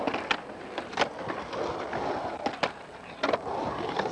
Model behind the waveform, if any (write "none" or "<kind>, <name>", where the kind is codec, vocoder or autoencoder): none